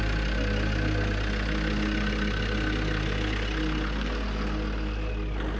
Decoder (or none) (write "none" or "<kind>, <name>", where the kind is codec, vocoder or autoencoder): none